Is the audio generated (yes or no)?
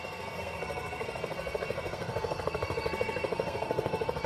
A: yes